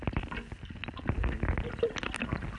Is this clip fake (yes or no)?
no